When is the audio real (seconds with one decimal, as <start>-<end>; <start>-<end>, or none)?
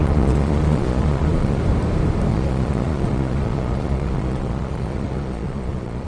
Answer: 1.6-2.3